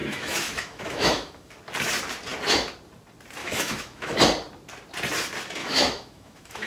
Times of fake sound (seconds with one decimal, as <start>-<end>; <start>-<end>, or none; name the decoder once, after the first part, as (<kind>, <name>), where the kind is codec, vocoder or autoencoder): 0.0-1.5 (autoencoder, DAC-VAE); 3.4-4.1; 5.6-6.7